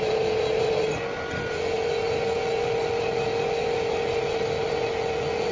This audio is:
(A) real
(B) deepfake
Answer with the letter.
A